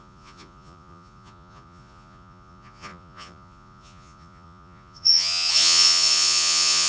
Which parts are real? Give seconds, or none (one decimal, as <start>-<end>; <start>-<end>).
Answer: none